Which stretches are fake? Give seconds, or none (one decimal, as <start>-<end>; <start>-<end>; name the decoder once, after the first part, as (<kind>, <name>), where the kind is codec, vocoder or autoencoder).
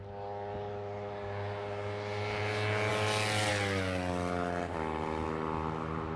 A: none